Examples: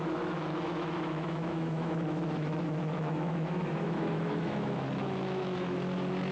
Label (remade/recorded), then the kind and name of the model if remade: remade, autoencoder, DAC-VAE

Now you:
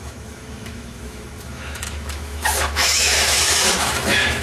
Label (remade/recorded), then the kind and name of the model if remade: remade, autoencoder, DAC-VAE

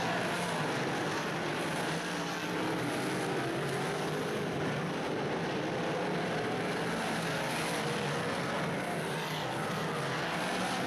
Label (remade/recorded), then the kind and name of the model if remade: recorded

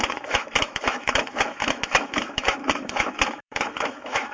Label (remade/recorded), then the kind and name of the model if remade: remade, autoencoder, DAC-VAE